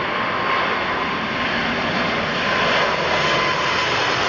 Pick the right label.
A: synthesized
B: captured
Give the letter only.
B